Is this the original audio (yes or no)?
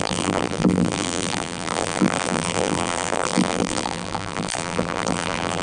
no